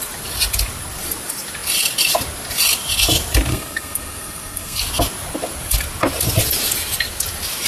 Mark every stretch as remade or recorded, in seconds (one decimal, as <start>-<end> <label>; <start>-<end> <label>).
0.0-3.5 recorded; 3.5-4.8 remade; 4.8-7.7 recorded